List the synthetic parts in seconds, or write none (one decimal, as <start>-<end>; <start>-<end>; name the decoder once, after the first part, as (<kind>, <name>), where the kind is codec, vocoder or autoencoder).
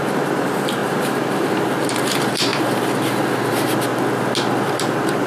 0.0-2.5 (vocoder, BigVGAN v2); 3.5-3.9; 4.7-5.3